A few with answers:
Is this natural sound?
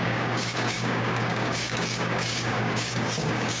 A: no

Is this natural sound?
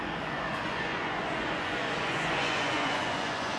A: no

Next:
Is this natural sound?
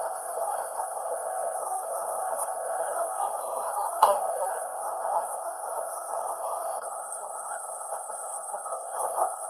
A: no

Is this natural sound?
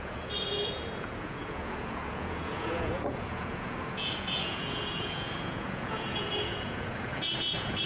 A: no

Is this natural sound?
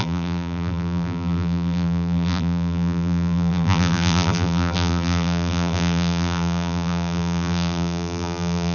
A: no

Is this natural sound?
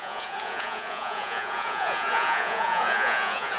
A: no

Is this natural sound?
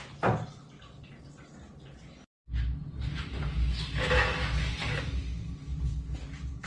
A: yes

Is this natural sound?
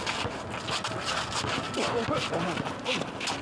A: yes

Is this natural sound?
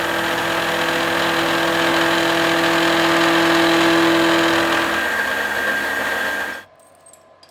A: yes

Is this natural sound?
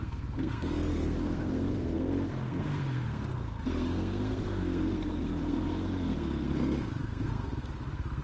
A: no